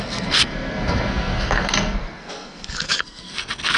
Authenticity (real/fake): fake